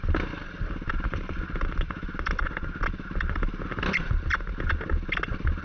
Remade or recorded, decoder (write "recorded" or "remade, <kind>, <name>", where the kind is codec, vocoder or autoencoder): recorded